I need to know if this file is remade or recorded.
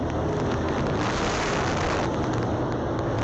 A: recorded